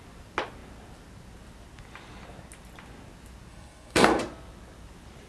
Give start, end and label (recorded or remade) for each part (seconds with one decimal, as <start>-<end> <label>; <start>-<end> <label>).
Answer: 0.0-3.5 recorded; 3.5-4.2 remade; 4.2-5.3 recorded